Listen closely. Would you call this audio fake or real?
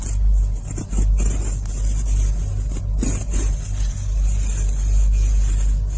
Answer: real